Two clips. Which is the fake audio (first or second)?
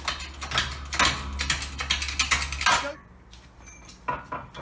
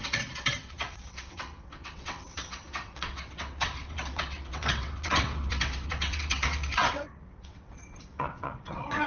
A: second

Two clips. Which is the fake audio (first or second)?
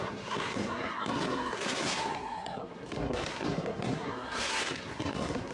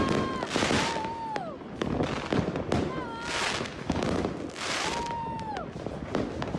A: first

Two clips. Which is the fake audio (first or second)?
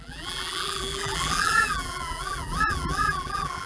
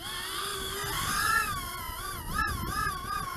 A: first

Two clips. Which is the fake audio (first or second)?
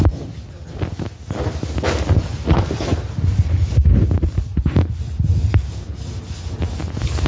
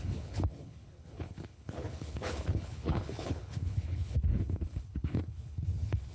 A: second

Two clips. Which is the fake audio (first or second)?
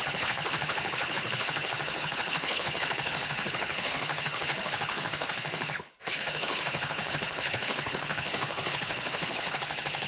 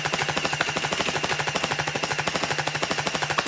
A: first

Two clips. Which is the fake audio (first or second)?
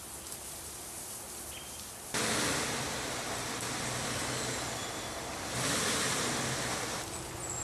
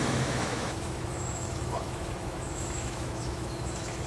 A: second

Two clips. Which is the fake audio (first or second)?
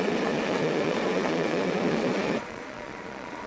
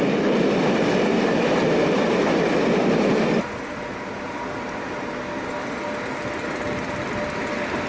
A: first